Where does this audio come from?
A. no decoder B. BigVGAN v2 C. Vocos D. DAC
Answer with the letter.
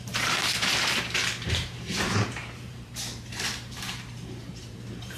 B